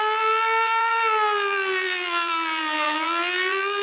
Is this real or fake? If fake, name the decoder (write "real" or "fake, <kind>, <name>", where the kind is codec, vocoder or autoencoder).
fake, vocoder, BigVGAN v2